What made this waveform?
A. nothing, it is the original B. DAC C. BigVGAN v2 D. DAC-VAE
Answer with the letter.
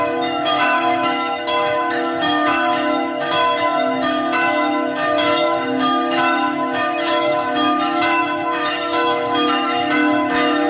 D